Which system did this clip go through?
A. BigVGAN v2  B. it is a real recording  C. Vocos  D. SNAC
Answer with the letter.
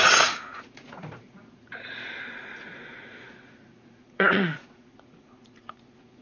C